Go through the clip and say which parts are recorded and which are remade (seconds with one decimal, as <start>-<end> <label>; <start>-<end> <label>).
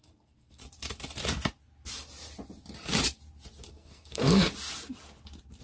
0.0-0.6 remade; 0.6-3.7 recorded; 3.7-4.5 remade; 4.5-5.6 recorded